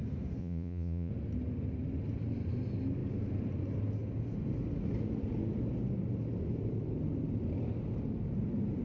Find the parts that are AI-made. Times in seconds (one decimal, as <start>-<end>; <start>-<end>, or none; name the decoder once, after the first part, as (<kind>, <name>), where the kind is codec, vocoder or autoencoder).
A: 0.4-1.1 (vocoder, Vocos)